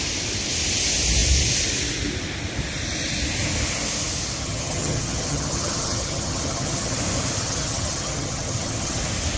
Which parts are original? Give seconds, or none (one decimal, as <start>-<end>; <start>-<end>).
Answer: 0.0-4.4; 7.0-7.4; 9.0-9.4